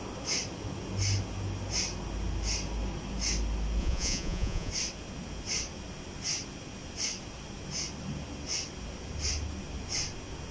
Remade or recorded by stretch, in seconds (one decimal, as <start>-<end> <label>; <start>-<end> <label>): 0.0-3.8 recorded; 3.8-4.7 remade; 4.7-10.5 recorded